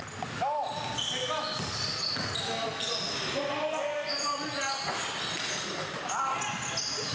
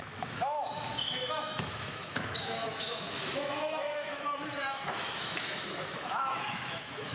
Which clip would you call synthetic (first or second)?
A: second